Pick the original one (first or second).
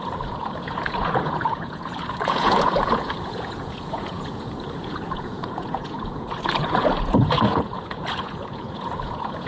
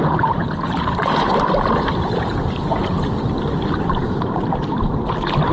second